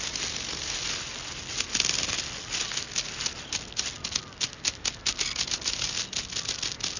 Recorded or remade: recorded